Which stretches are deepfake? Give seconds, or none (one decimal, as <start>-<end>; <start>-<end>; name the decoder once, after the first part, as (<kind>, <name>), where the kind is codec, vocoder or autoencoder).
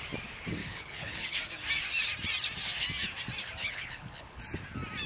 0.6-1.4 (codec, HILCodec); 3.6-4.4